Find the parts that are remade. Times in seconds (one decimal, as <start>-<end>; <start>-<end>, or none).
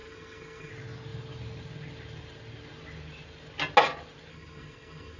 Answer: 0.0-0.7; 4.3-5.2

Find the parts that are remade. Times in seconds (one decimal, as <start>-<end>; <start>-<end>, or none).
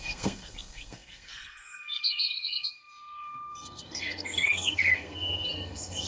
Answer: 0.0-6.1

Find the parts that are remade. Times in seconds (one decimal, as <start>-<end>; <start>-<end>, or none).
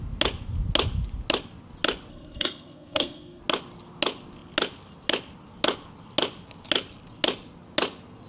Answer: 2.1-3.4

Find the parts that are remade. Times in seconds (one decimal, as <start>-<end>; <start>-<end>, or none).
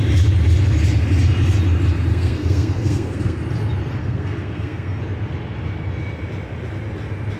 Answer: 2.1-3.4; 4.0-5.0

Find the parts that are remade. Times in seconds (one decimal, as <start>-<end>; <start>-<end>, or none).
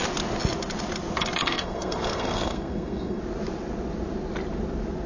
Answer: 1.4-3.2